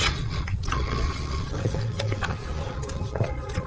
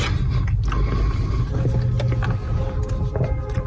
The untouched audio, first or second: second